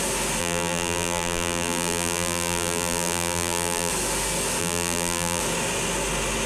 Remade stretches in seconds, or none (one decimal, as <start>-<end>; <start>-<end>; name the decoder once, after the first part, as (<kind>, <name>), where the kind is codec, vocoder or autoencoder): 0.4-3.9 (vocoder, BigVGAN v2); 4.6-5.4